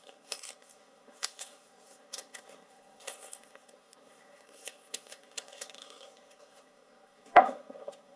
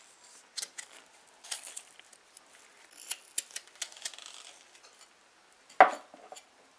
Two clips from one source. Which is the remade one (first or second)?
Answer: first